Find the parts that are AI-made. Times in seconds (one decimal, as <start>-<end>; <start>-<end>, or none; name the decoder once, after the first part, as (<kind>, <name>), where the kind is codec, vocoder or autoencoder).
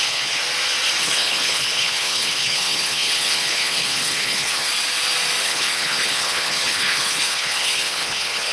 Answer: 0.0-0.4 (codec, HILCodec); 1.0-4.7; 5.4-8.5